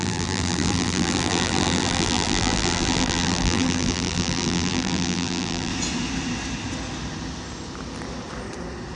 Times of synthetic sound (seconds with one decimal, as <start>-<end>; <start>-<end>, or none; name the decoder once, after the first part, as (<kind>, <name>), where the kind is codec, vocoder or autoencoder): 0.0-5.7 (vocoder, BigVGAN v2)